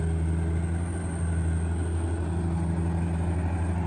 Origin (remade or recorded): recorded